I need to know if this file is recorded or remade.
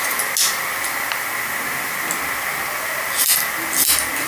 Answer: recorded